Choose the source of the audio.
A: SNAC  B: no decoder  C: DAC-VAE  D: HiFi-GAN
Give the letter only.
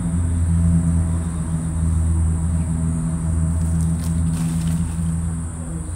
B